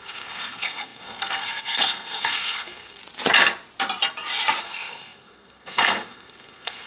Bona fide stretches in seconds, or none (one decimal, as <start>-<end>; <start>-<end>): 3.0-4.6